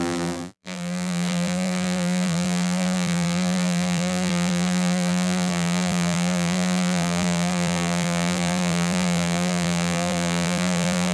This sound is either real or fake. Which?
fake